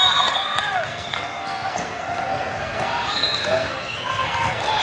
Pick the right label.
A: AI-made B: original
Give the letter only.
A